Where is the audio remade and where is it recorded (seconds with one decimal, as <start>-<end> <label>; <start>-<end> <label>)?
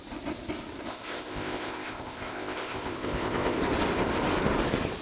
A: 0.0-0.9 recorded; 0.9-3.6 remade; 3.6-5.0 recorded